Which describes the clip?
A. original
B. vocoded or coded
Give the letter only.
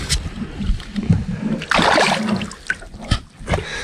A